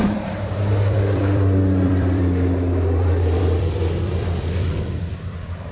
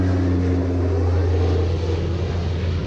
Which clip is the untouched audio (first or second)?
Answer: second